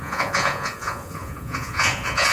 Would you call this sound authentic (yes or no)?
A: no